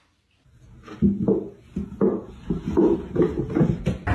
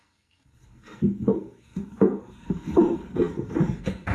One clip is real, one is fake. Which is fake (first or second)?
second